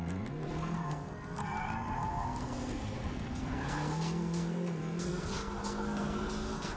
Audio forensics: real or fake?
fake